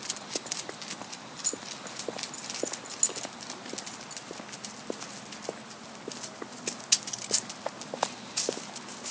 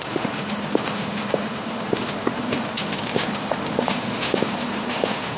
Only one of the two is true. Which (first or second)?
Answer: first